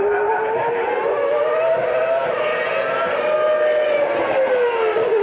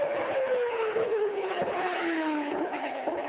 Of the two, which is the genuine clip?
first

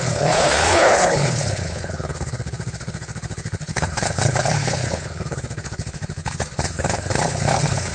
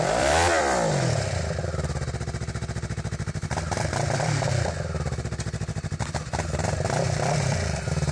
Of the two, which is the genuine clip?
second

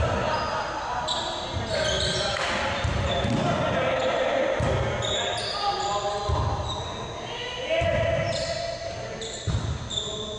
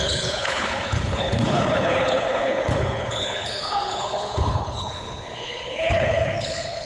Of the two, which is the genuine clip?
first